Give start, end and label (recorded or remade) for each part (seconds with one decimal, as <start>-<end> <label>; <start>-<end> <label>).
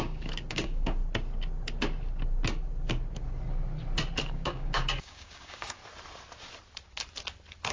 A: 0.0-1.0 remade; 1.0-4.3 recorded; 4.3-5.8 remade; 5.8-7.7 recorded